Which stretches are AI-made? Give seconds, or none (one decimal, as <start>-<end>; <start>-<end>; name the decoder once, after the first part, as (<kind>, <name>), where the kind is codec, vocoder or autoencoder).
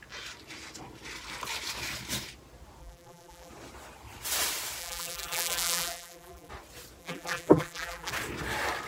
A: 2.8-3.5 (vocoder, BigVGAN v2); 4.8-6.5; 7.0-8.1